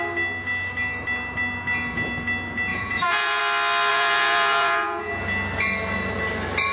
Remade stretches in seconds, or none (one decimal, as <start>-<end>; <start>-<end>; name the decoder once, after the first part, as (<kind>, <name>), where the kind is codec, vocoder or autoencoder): 2.7-3.4 (vocoder, Vocos); 3.9-5.1